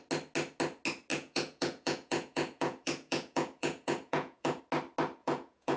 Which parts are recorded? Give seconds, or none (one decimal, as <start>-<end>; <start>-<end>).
0.0-1.1; 4.6-5.2